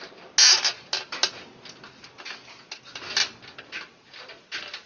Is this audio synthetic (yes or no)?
no